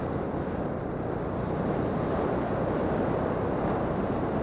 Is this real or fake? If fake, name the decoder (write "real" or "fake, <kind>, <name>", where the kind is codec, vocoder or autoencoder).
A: real